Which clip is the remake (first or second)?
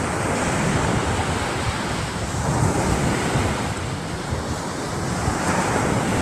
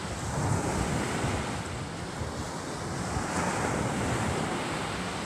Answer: first